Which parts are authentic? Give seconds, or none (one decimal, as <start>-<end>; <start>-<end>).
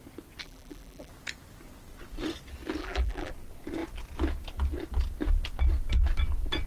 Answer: 0.0-0.4; 1.1-2.8; 3.3-6.7